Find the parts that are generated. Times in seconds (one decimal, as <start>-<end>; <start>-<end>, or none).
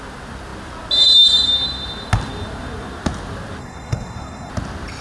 3.6-4.5